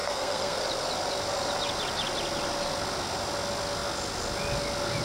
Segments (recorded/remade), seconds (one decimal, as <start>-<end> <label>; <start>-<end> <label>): 0.0-0.6 remade; 0.6-5.0 recorded